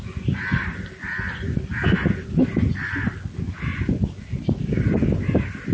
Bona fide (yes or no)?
yes